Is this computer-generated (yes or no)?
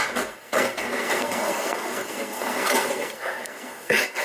yes